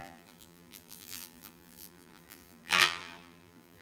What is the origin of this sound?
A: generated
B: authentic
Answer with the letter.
A